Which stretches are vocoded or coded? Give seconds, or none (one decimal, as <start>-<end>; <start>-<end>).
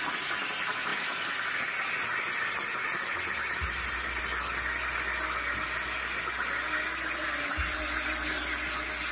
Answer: none